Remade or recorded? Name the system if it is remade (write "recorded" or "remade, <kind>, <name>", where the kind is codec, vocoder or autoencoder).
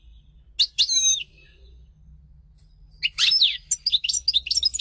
recorded